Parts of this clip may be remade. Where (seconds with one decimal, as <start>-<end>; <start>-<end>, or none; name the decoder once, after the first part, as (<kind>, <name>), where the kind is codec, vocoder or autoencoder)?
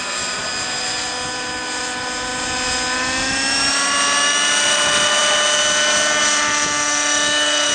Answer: none